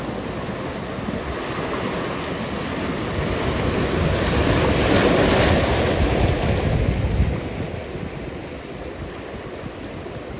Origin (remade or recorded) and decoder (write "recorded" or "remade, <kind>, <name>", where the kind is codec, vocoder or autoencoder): recorded